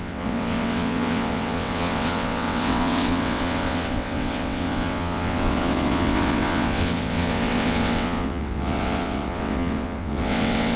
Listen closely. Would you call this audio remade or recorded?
remade